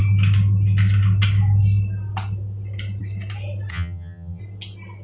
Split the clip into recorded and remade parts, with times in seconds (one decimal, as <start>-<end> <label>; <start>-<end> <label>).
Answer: 0.0-3.7 recorded; 3.7-4.4 remade; 4.4-5.0 recorded